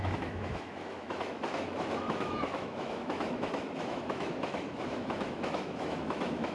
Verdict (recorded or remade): remade